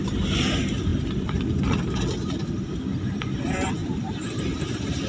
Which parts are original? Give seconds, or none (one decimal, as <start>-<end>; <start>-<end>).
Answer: 0.0-3.8

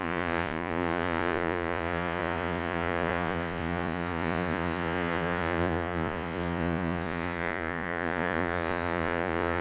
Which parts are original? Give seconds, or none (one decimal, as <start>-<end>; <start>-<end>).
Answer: none

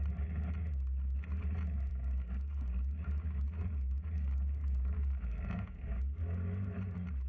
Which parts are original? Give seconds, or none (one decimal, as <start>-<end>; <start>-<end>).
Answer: 0.0-1.9; 6.2-7.3

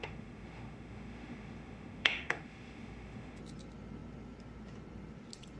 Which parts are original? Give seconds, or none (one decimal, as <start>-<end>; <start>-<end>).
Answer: 3.4-5.6

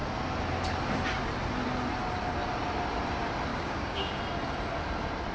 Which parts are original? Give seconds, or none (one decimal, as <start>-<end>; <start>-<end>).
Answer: 0.0-3.5; 4.2-5.3

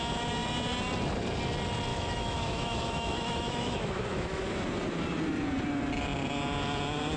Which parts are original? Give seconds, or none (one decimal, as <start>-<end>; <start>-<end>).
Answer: 0.0-1.9; 4.4-7.2